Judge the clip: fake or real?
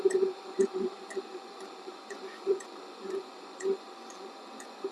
fake